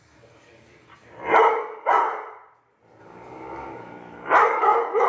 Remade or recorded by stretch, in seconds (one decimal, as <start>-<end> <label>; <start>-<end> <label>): 0.0-0.9 remade; 0.9-1.5 recorded; 1.5-2.0 remade; 2.0-3.0 recorded; 3.0-5.1 remade